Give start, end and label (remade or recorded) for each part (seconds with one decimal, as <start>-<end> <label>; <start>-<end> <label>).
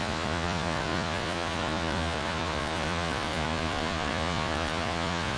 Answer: 0.0-5.4 remade